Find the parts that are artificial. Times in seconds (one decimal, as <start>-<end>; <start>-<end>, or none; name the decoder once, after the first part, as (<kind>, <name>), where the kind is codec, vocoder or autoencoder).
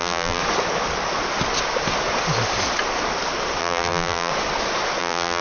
0.0-0.4 (vocoder, BigVGAN v2); 3.6-4.3; 5.0-5.4